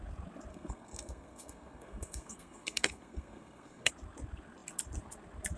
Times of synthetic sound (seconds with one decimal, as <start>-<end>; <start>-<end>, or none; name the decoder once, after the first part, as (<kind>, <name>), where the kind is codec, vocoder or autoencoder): 0.5-3.9 (codec, SNAC)